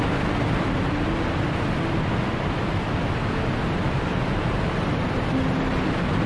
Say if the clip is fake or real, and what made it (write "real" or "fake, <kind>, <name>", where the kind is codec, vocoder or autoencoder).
real